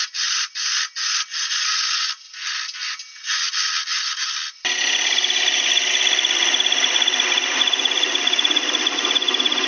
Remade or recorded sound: recorded